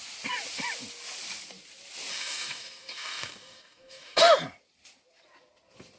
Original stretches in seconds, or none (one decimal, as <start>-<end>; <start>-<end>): 0.0-2.1; 4.2-6.0